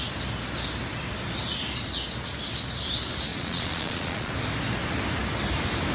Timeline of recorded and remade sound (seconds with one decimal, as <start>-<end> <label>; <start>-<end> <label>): 0.0-3.3 recorded; 3.3-4.3 remade; 4.3-5.9 recorded